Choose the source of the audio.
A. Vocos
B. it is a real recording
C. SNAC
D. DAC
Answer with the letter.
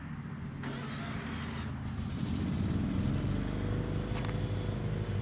B